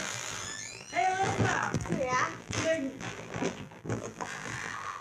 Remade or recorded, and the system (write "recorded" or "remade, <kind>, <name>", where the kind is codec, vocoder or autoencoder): remade, vocoder, BigVGAN v2